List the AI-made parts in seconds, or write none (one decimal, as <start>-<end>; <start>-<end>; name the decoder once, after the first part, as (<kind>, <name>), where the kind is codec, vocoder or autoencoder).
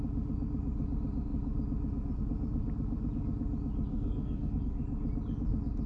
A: 3.9-4.6 (codec, SNAC)